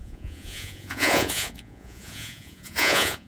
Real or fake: fake